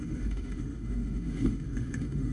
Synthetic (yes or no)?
yes